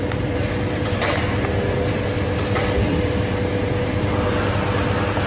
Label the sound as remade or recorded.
recorded